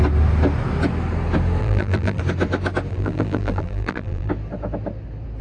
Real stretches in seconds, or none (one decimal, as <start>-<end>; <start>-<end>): 0.0-1.6; 2.2-2.9; 4.3-5.4